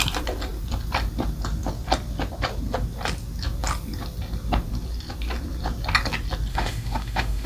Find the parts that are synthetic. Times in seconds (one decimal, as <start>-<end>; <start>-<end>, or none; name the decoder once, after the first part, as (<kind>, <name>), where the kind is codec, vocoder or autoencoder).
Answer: 6.5-7.5 (autoencoder, DAC-VAE)